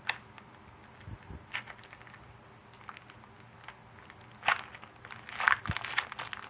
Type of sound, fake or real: real